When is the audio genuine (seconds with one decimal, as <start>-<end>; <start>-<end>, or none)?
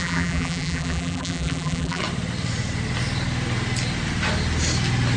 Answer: 2.0-5.2